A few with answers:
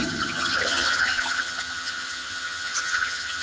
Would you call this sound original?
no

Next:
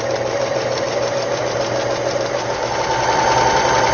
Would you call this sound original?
yes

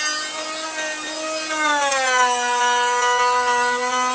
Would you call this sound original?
yes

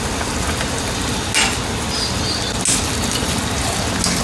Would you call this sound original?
yes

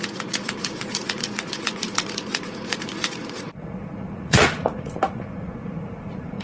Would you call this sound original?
no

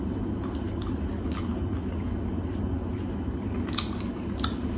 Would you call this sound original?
yes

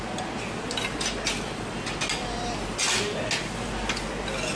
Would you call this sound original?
yes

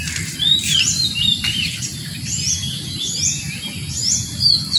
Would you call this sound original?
yes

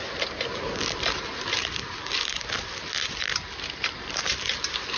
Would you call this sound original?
yes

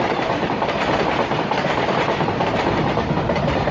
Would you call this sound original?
no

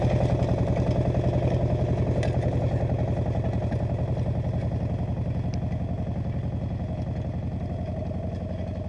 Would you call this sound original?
yes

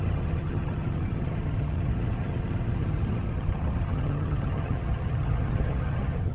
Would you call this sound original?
no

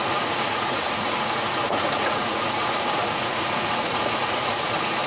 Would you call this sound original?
no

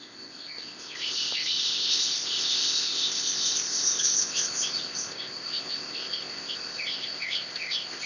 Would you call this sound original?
no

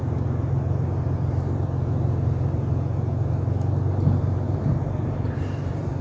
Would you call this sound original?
yes